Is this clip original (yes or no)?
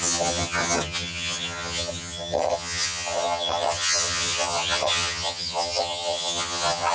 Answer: no